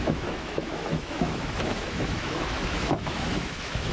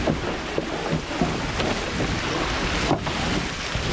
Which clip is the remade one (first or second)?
first